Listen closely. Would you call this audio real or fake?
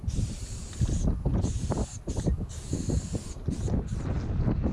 real